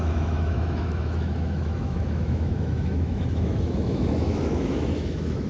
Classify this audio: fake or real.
fake